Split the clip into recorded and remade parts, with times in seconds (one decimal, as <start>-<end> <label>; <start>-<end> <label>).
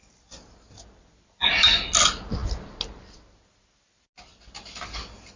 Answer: 0.0-5.4 recorded